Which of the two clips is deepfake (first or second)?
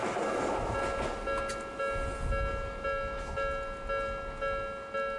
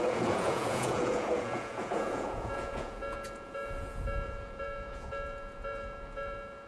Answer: second